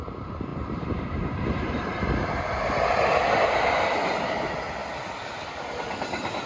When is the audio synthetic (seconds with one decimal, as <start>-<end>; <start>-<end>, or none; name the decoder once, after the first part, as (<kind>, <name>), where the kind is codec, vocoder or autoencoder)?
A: none